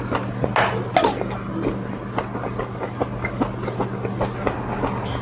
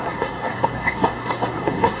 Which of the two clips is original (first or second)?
first